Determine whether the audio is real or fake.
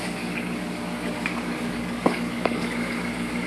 fake